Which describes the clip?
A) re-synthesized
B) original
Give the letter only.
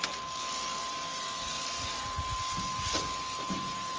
B